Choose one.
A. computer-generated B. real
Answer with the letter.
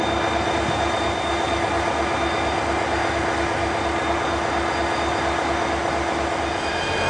B